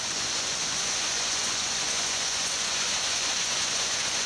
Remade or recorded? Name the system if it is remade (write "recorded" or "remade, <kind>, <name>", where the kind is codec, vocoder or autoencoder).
remade, vocoder, Vocos